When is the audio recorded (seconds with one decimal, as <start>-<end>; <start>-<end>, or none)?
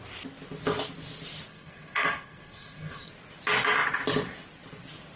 0.0-1.5; 3.1-5.2